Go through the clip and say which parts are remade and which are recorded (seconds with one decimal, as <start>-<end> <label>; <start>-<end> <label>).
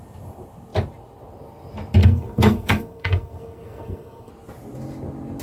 0.0-2.0 recorded; 2.0-4.3 remade; 4.3-5.4 recorded